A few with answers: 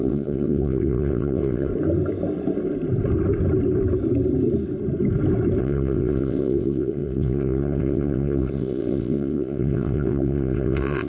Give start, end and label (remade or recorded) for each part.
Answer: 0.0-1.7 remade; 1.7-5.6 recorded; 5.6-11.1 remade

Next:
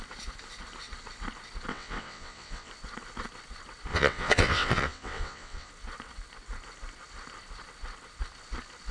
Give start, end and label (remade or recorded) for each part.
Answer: 0.0-1.7 recorded; 1.7-2.7 remade; 2.7-3.9 recorded; 3.9-5.7 remade; 5.7-8.9 recorded

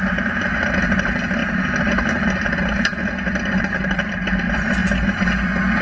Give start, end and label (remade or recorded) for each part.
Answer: 0.0-5.8 recorded

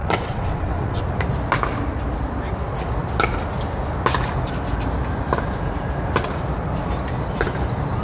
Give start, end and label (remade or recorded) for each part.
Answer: 0.0-1.0 remade; 1.0-8.0 recorded

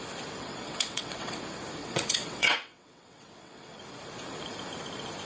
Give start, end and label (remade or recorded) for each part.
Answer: 0.0-0.4 recorded; 0.4-1.4 remade; 1.4-1.8 recorded; 1.8-3.8 remade; 3.8-5.2 recorded

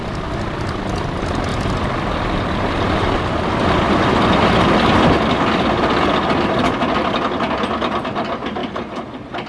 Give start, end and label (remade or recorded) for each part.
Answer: 0.0-9.5 recorded

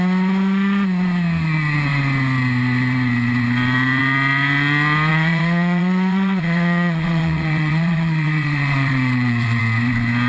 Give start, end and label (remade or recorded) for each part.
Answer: 0.0-5.1 recorded; 5.1-9.6 remade; 9.6-10.3 recorded

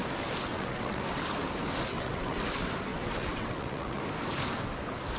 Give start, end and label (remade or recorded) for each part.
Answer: 0.0-0.5 recorded; 0.5-1.0 remade; 1.0-1.9 recorded; 1.9-2.4 remade; 2.4-2.9 recorded; 2.9-4.0 remade; 4.0-5.2 recorded